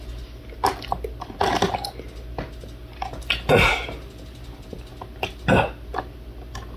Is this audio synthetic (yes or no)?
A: no